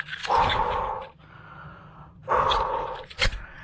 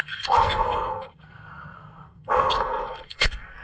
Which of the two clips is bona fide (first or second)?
first